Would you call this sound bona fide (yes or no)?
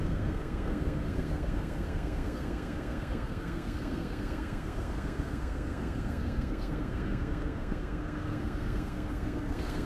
no